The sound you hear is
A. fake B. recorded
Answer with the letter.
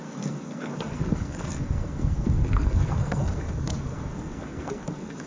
A